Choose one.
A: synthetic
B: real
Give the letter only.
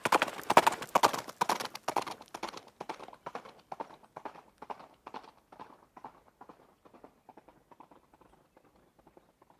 B